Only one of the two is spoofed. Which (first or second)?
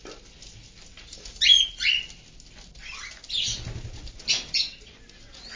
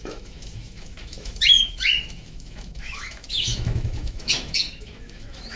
second